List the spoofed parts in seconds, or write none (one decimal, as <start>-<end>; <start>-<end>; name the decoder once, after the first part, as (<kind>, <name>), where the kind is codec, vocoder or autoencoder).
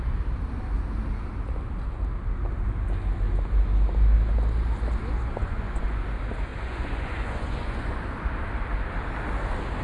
5.4-6.0 (vocoder, Vocos); 6.5-8.0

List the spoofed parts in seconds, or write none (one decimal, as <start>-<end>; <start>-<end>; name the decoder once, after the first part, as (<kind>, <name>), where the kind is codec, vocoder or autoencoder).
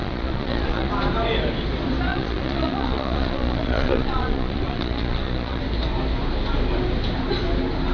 0.0-0.9 (vocoder, Vocos); 2.1-5.6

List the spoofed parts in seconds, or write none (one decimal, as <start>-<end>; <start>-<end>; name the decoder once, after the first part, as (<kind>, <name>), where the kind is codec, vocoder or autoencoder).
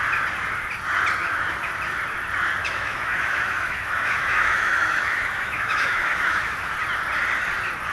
1.2-1.7 (autoencoder, DAC-VAE); 2.6-6.7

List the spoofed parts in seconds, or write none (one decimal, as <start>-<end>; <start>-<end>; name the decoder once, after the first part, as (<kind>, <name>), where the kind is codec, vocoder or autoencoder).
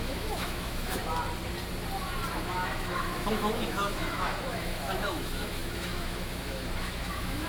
0.0-1.0 (autoencoder, DAC-VAE); 2.3-7.5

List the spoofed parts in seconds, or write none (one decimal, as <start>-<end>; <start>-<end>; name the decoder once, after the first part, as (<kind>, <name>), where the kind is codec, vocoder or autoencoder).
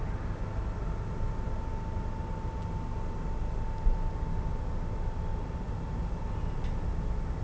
5.3-6.0 (vocoder, BigVGAN v2)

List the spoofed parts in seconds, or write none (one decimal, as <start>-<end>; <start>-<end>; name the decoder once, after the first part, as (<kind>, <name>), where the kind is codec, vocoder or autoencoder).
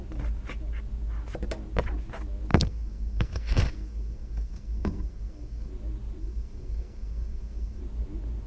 2.5-5.7 (codec, SNAC); 6.2-7.8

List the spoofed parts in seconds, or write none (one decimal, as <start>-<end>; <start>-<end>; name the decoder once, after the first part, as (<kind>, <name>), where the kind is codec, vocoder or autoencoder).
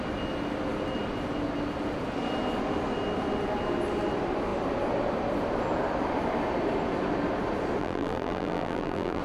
7.8-9.2 (vocoder, BigVGAN v2)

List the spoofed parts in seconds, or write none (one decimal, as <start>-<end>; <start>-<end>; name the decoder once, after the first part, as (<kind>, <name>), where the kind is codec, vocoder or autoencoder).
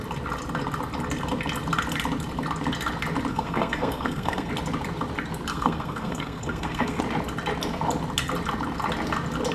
3.3-4.5 (codec, SNAC); 5.5-7.0